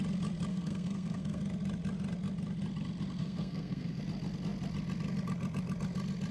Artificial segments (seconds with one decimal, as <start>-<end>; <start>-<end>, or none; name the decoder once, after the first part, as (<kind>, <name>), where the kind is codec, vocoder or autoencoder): 0.5-1.4 (codec, SNAC); 3.2-4.0